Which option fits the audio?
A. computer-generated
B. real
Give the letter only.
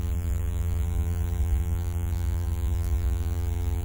A